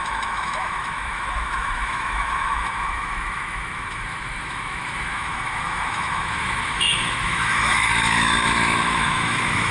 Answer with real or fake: fake